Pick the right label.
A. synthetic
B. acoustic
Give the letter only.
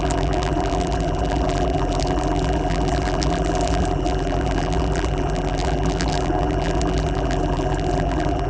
A